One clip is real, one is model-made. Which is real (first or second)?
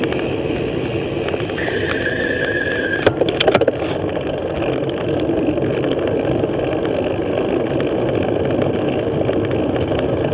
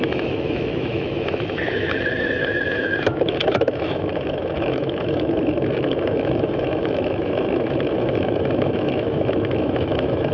first